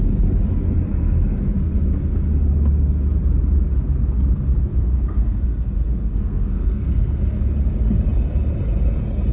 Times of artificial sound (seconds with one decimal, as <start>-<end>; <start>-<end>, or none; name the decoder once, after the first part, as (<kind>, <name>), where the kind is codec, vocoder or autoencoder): 4.7-7.2 (codec, SNAC)